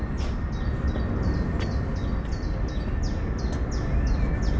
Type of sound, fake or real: real